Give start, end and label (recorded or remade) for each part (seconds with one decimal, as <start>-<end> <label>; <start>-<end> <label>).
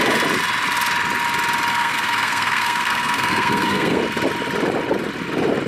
0.0-1.7 recorded; 1.7-4.0 remade; 4.0-5.7 recorded